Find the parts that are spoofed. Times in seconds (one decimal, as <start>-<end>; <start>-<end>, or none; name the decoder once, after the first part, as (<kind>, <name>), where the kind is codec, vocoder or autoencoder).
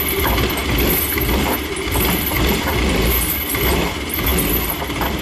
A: none